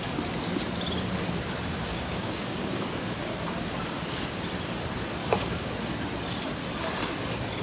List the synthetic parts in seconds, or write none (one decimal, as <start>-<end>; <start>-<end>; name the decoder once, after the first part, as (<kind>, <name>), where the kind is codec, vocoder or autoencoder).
1.9-3.2 (codec, DAC); 5.2-5.7